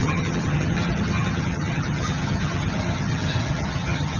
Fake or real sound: fake